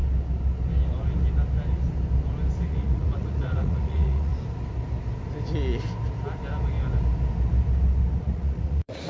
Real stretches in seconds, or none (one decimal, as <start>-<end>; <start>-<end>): 0.0-2.7; 4.3-8.2